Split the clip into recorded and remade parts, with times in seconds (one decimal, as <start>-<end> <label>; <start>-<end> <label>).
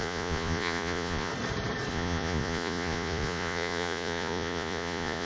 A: 0.0-1.3 remade; 1.3-1.9 recorded; 1.9-5.3 remade